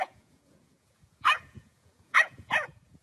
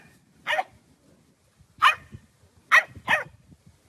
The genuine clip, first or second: second